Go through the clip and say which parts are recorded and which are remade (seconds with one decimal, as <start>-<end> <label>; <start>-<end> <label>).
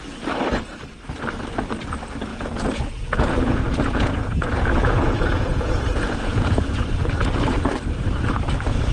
0.0-2.3 recorded; 2.3-7.1 remade; 7.1-8.9 recorded